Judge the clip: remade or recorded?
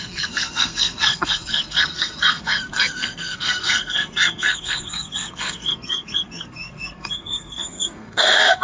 remade